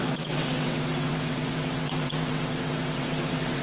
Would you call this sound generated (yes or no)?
yes